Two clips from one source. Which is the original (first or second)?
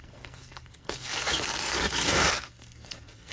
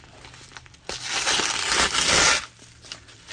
second